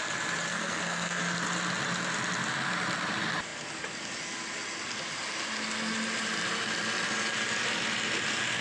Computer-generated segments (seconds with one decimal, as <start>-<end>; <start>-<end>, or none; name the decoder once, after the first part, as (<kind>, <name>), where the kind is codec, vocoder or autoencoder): 0.5-1.2 (codec, SNAC)